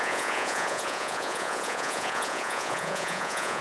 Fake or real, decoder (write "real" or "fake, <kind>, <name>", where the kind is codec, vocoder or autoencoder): fake, vocoder, Vocos